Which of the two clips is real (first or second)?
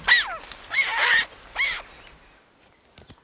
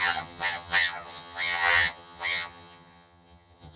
first